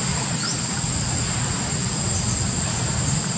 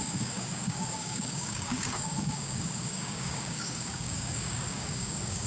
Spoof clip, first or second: second